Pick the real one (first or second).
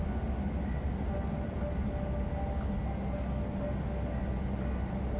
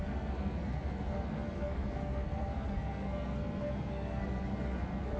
first